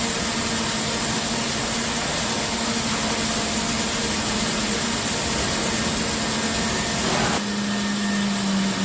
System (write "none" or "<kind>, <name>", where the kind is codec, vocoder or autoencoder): none